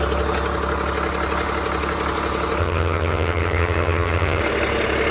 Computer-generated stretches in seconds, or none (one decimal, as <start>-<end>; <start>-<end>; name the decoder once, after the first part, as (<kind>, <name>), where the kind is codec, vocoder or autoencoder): 2.6-4.4 (vocoder, HiFi-GAN)